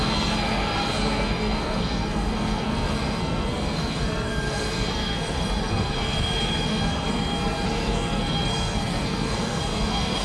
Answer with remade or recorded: remade